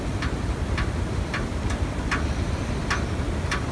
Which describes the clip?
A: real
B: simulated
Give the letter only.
A